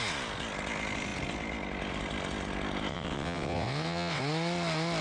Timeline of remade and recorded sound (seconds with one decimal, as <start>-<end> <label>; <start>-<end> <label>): 0.0-2.9 recorded; 2.9-4.2 remade; 4.2-5.0 recorded